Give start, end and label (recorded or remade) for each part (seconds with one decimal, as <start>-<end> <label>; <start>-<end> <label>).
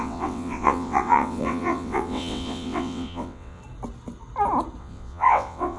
0.0-3.6 remade; 3.6-4.8 recorded; 4.8-5.8 remade